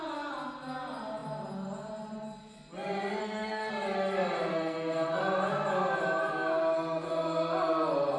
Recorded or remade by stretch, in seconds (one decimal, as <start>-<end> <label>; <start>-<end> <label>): 0.0-3.2 recorded; 3.2-3.7 remade; 3.7-4.5 recorded; 4.5-5.2 remade; 5.2-8.2 recorded